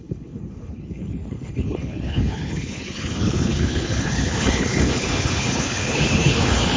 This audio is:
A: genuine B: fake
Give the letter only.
B